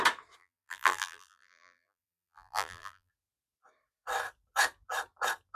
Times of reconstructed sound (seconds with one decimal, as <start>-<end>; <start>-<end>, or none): 0.4-3.1